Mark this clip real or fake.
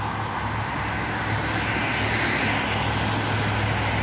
real